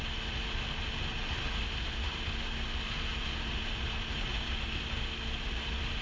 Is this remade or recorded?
recorded